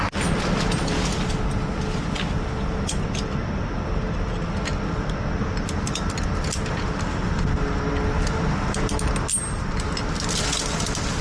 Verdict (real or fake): real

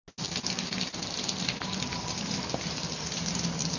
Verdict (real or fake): real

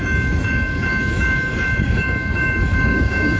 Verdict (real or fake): fake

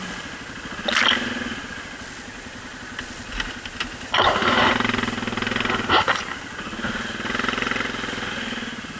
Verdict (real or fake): real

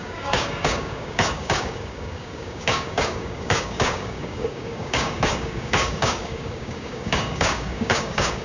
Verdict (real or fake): fake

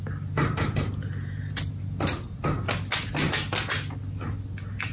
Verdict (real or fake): real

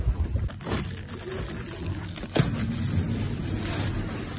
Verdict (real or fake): real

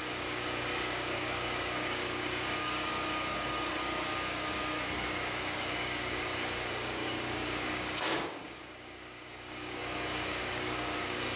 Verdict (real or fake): fake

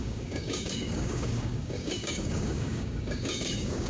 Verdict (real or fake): fake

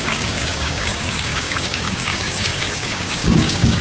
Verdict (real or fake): fake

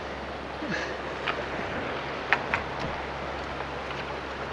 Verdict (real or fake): real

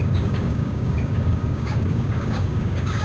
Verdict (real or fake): fake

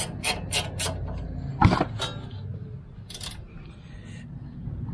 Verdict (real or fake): real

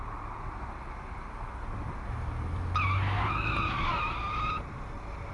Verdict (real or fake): real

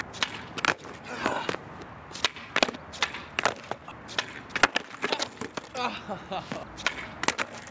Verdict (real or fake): real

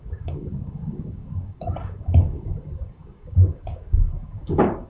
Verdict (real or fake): fake